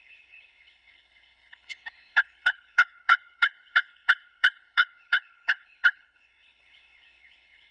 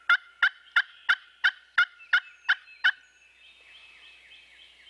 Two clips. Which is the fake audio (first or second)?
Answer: first